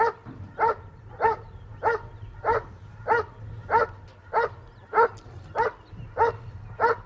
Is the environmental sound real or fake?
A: real